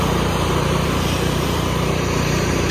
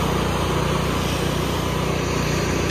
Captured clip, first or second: second